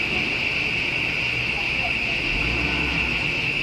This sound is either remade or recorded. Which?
recorded